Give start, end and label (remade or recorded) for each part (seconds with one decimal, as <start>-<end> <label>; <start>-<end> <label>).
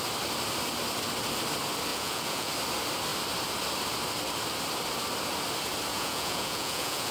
0.0-1.9 recorded; 1.9-2.5 remade; 2.5-5.9 recorded; 5.9-7.1 remade